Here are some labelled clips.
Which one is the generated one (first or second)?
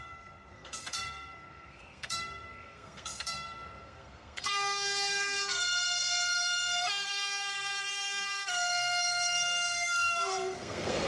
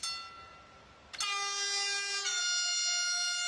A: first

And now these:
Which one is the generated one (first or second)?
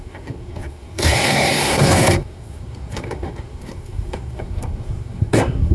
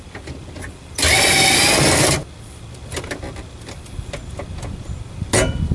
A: first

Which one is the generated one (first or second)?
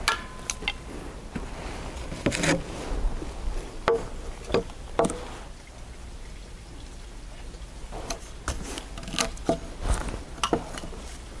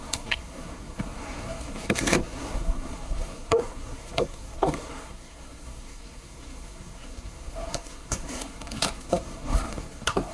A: second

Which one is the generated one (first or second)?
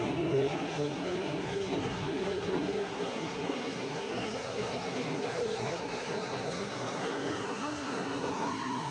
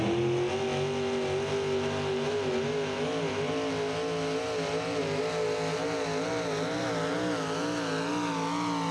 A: first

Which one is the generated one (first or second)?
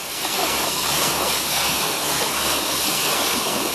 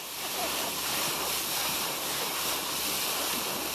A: first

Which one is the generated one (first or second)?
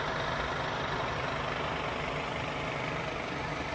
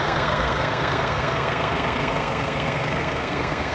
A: second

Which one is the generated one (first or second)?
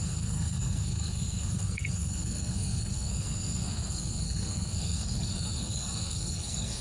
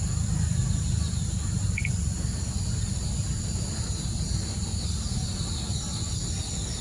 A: first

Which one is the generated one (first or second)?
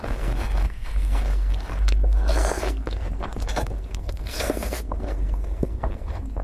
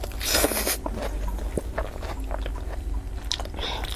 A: first